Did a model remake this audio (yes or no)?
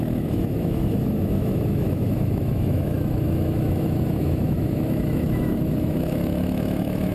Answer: yes